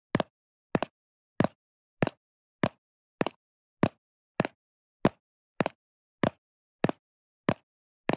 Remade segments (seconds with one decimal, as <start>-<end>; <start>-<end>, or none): none